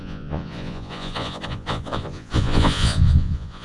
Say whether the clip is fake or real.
fake